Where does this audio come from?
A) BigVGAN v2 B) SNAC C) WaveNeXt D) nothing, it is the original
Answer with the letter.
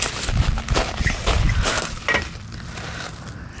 D